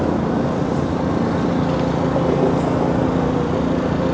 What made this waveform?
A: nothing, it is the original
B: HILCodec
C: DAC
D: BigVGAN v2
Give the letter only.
A